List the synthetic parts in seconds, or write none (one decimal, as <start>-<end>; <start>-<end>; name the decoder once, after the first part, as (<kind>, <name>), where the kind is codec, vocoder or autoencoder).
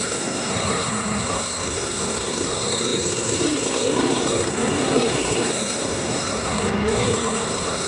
0.0-7.9 (codec, SNAC)